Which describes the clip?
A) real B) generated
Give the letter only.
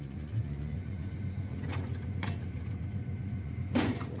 B